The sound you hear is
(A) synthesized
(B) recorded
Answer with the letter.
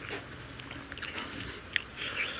B